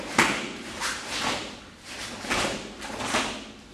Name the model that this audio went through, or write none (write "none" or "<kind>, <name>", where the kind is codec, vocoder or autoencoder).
none